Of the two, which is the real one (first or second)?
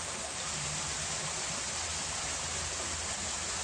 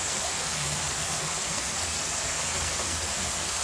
first